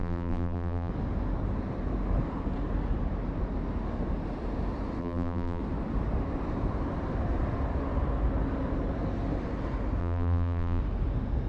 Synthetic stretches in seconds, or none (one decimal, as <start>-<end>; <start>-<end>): 0.0-0.9; 5.0-5.6; 10.0-10.8